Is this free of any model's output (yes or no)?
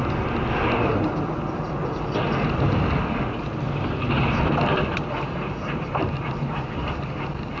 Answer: yes